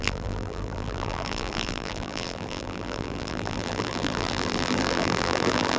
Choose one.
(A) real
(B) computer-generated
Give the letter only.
B